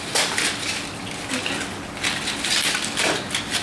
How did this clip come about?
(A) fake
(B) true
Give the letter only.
B